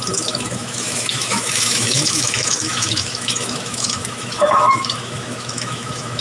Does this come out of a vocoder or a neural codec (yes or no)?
yes